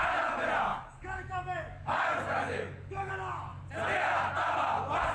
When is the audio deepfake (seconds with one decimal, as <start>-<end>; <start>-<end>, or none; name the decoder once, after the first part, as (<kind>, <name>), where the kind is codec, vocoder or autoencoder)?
0.7-3.1 (codec, DAC)